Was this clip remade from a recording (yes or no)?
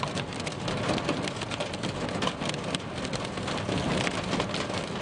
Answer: no